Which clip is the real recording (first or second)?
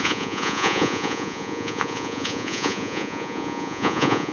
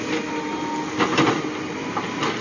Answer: second